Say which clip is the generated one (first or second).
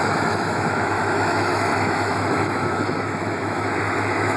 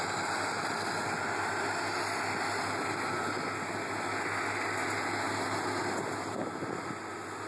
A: first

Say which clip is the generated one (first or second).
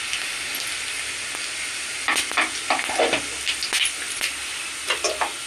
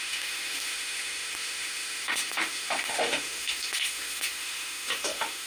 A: second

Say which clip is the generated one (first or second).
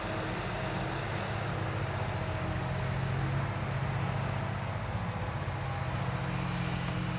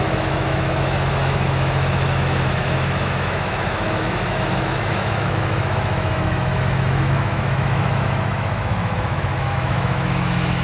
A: second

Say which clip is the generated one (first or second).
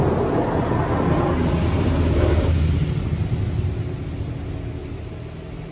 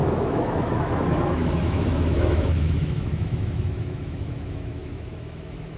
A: second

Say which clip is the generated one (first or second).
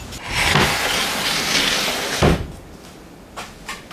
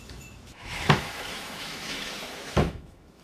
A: second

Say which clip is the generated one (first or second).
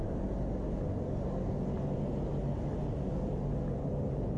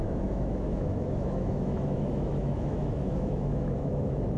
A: second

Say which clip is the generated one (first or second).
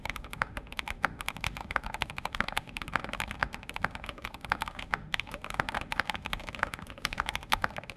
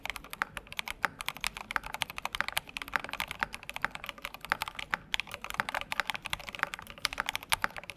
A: first